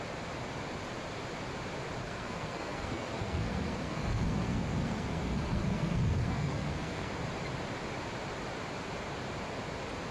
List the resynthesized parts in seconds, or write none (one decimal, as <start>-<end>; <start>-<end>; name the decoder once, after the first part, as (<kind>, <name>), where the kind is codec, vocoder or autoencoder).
2.0-7.1 (codec, SNAC)